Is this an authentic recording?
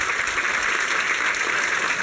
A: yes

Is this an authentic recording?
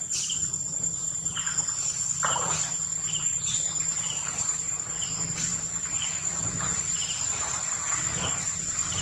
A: no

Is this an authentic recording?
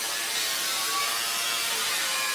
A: no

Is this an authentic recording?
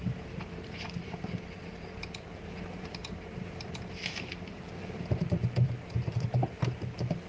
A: no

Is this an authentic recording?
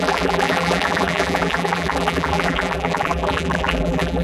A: no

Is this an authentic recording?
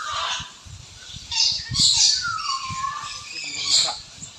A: no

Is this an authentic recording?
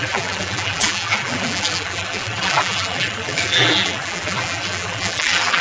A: no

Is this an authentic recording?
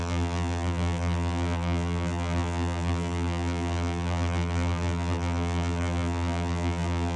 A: no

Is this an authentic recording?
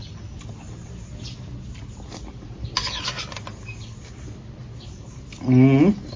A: yes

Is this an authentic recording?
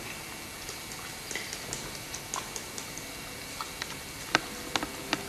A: yes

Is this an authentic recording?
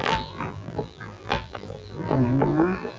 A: no